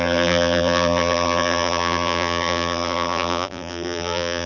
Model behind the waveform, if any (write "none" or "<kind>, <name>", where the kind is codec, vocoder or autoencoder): vocoder, BigVGAN v2